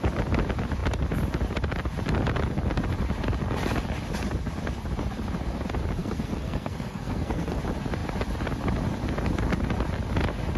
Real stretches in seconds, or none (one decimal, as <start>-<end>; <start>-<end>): 0.0-6.0; 7.6-10.6

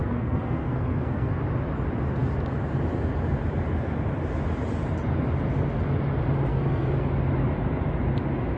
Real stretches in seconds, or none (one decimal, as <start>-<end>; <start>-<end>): 1.4-6.5; 7.1-8.6

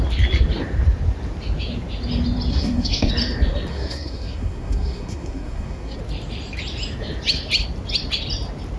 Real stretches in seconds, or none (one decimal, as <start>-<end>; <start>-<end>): 0.0-2.5; 3.1-3.7; 6.0-8.8

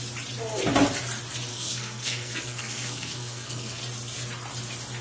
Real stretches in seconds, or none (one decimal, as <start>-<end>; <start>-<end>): 0.0-1.5; 3.8-5.0

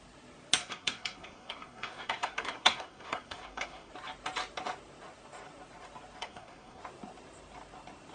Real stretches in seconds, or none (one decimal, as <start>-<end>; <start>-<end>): 0.0-0.6; 3.9-6.2; 6.8-8.1

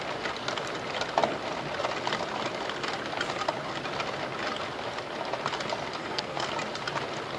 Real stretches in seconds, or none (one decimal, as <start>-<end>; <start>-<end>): 0.0-6.0; 6.5-7.4

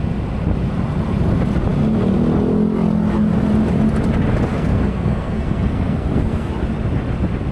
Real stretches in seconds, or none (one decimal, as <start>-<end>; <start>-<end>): 0.0-4.5; 6.5-7.5

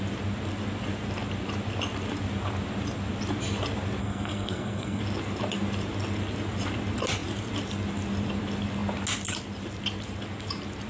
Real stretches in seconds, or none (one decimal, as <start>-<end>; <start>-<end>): 0.0-4.0; 5.0-10.9